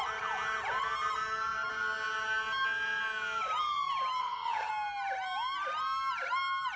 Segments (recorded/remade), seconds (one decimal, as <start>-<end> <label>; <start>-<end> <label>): 0.0-4.2 recorded; 4.2-4.7 remade; 4.7-6.8 recorded